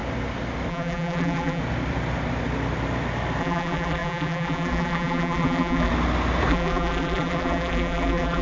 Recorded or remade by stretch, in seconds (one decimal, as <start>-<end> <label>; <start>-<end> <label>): 0.0-0.7 recorded; 0.7-1.6 remade; 1.6-3.4 recorded; 3.4-5.9 remade; 5.9-6.5 recorded; 6.5-8.4 remade